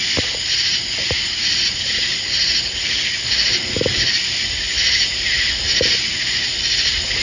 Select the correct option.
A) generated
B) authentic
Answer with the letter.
B